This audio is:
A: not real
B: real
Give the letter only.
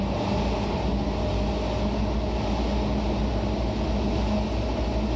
B